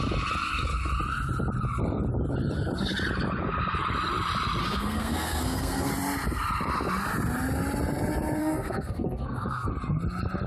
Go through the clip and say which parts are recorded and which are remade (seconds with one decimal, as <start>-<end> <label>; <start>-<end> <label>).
0.0-4.6 recorded; 4.6-5.9 remade; 5.9-8.4 recorded; 8.4-9.7 remade; 9.7-10.5 recorded